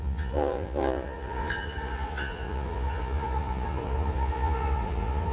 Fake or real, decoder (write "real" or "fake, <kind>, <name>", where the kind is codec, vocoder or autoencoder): fake, vocoder, Vocos